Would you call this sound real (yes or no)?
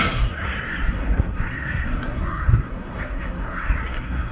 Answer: no